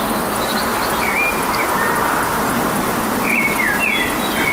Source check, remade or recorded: recorded